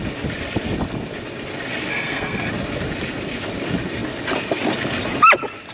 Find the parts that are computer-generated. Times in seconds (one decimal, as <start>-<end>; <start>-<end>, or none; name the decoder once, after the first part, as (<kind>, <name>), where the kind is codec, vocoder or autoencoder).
1.9-2.5 (codec, SNAC)